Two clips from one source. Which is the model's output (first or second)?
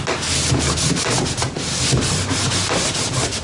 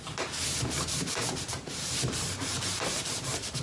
second